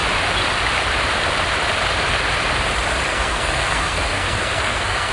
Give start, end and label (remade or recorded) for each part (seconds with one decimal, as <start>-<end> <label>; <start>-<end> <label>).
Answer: 0.0-3.1 recorded; 3.1-5.1 remade